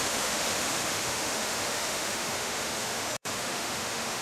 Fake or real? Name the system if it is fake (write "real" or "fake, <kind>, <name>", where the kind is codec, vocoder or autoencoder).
fake, autoencoder, DAC-VAE